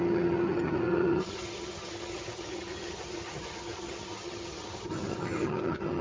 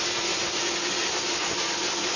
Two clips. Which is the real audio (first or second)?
second